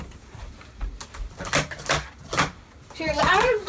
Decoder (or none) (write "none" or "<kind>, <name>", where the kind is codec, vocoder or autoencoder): none